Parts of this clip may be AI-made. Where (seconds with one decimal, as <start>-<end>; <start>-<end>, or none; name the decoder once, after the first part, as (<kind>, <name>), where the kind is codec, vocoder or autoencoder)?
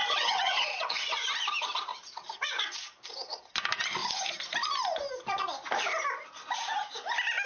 0.0-1.2 (vocoder, WaveNeXt); 1.9-2.8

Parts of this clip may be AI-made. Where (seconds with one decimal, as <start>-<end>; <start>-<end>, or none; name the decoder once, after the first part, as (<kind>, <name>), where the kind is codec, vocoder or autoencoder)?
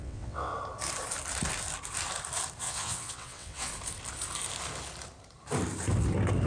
0.0-0.5 (vocoder, WaveNeXt); 2.6-3.7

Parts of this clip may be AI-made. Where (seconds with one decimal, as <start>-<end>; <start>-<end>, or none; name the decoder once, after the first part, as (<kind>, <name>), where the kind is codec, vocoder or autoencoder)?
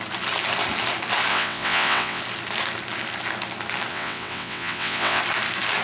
1.3-2.2 (vocoder, WaveNeXt); 3.9-5.2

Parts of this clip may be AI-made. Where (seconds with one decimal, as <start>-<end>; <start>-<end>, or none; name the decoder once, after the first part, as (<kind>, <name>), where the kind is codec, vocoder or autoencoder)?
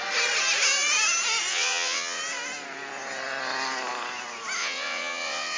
1.5-2.2 (vocoder, WaveNeXt); 4.6-5.6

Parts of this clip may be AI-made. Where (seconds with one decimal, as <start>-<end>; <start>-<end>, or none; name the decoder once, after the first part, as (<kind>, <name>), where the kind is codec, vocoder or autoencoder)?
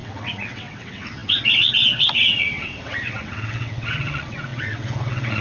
0.0-5.4 (vocoder, WaveNeXt)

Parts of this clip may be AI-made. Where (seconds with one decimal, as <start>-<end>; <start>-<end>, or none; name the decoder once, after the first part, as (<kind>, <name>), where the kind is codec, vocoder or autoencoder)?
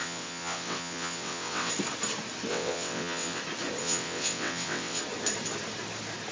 0.0-1.7 (vocoder, WaveNeXt); 2.5-3.4; 3.8-5.0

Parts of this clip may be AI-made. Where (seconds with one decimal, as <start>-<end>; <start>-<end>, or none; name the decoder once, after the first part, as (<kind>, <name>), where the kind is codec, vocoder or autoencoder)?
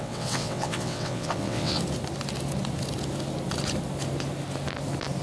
0.0-1.8 (vocoder, WaveNeXt)